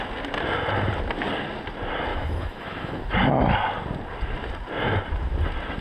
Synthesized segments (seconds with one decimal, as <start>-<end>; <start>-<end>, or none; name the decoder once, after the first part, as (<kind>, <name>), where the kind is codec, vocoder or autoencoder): 2.1-3.1 (autoencoder, DAC-VAE)